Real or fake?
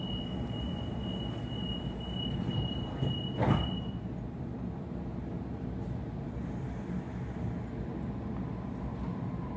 real